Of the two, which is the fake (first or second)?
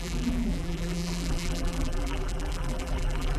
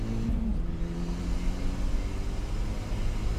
first